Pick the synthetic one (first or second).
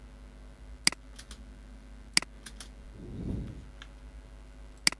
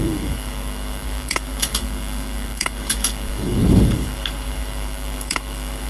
second